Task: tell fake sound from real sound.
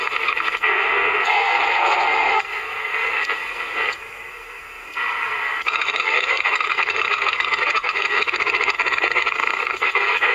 fake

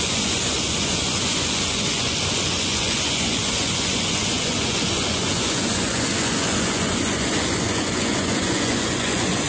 fake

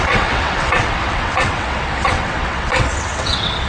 fake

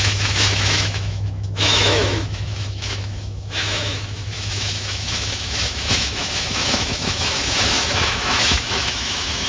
fake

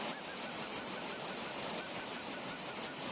real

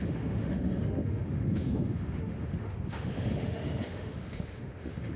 fake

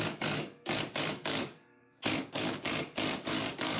fake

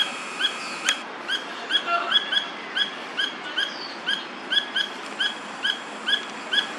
real